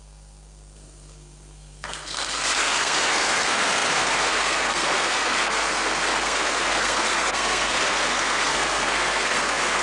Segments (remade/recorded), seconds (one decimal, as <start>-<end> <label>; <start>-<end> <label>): 0.0-9.8 remade